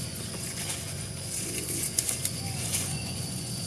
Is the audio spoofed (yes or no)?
yes